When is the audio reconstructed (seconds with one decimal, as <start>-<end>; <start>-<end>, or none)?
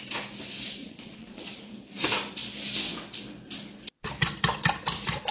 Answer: 0.8-1.5